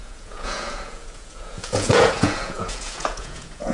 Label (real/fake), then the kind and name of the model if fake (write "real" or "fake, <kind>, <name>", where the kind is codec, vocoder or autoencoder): fake, vocoder, Vocos